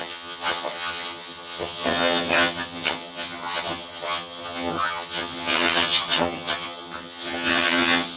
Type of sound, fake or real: fake